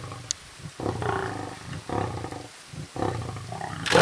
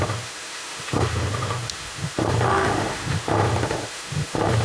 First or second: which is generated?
second